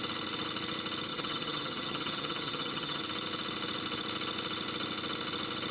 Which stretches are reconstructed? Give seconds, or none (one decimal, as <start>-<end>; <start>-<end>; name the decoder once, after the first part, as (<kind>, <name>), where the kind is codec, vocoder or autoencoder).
1.1-3.0 (vocoder, HiFi-GAN)